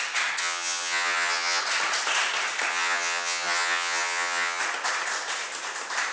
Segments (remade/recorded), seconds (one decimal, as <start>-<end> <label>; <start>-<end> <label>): 0.0-0.4 recorded; 0.4-1.6 remade; 1.6-2.7 recorded; 2.7-4.6 remade; 4.6-6.1 recorded